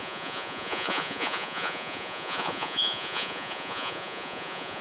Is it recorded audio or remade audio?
remade